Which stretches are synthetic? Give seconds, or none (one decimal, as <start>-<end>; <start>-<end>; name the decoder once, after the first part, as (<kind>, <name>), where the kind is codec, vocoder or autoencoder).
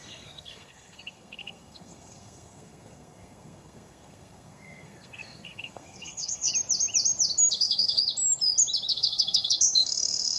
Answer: 0.0-6.5 (codec, SNAC); 7.5-8.0; 8.9-10.4